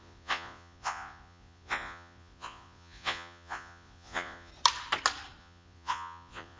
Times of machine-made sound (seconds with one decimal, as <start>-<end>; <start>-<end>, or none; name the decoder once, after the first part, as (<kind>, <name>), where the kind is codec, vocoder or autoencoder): 0.0-4.5 (vocoder, Vocos); 5.4-6.6

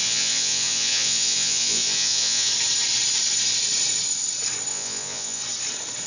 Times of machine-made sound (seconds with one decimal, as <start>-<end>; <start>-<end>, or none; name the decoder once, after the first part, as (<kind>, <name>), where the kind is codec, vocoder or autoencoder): 0.0-2.5 (vocoder, Vocos); 4.7-5.4

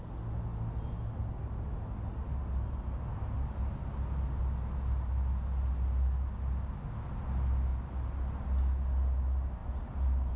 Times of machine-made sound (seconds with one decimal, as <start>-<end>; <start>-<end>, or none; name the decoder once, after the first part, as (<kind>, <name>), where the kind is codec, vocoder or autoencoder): none

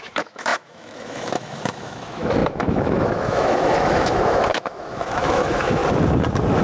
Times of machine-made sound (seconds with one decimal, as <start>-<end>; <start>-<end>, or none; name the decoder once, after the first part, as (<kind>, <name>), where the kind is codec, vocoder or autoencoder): 0.0-5.8 (autoencoder, DAC-VAE)

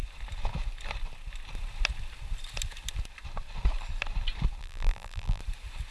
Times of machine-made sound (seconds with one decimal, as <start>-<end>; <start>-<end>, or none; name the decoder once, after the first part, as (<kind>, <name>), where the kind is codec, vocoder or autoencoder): 4.6-5.4 (vocoder, BigVGAN v2)

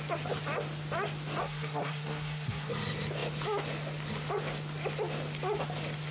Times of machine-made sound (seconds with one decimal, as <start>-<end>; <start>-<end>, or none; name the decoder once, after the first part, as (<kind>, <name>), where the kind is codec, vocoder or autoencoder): 1.4-2.7 (codec, SNAC)

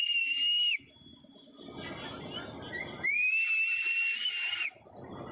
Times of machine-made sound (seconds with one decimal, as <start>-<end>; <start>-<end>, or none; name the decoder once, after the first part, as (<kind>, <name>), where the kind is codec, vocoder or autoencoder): none